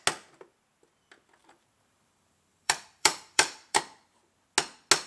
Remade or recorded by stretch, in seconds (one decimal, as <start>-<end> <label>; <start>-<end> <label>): 0.0-1.4 recorded; 1.4-3.8 remade; 3.8-5.1 recorded